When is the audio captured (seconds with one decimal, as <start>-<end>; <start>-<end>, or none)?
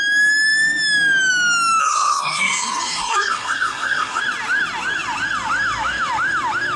0.0-1.8; 4.2-6.8